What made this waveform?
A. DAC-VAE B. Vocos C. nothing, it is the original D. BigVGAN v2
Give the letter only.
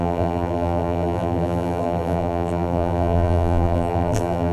D